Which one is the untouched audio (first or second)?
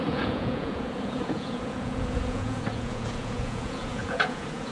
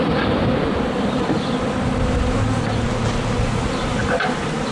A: second